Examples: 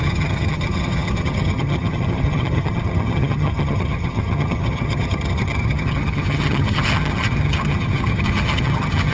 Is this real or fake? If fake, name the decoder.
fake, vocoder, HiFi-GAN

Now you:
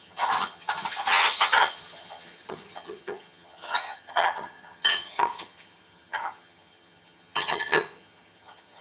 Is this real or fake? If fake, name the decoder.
fake, vocoder, HiFi-GAN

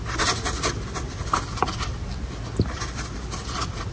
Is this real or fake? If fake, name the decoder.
real